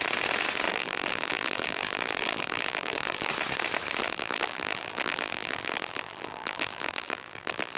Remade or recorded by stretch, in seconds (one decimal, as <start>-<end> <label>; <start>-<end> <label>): 0.0-0.7 recorded; 0.7-3.3 remade; 3.3-4.0 recorded; 4.0-7.8 remade

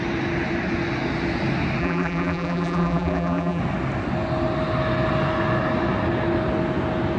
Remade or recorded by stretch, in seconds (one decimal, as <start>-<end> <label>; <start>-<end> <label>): 0.0-1.8 recorded; 1.8-3.6 remade; 3.6-7.2 recorded

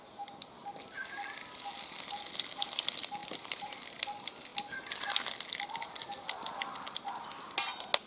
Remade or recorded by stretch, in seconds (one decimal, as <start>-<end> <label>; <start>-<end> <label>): 0.0-3.2 recorded; 3.2-3.7 remade; 3.7-8.1 recorded

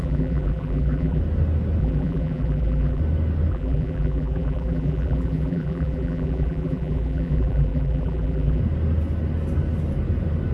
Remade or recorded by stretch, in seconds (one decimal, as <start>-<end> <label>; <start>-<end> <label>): 0.0-1.2 remade; 1.2-1.8 recorded; 1.8-3.0 remade; 3.0-3.5 recorded; 3.5-8.6 remade; 8.6-10.5 recorded

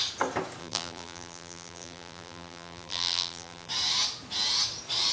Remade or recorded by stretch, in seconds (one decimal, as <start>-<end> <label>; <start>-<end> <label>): 0.0-0.6 recorded; 0.6-3.7 remade; 3.7-5.1 recorded

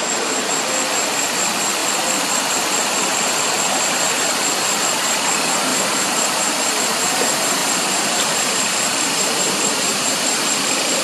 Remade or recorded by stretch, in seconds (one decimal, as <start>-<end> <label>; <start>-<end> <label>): 0.0-5.7 recorded; 5.7-6.7 remade; 6.7-7.6 recorded; 7.6-11.0 remade

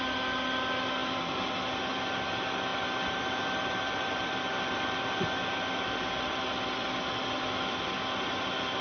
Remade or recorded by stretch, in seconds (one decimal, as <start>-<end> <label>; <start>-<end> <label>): 0.0-2.7 recorded; 2.7-5.7 remade; 5.7-8.8 recorded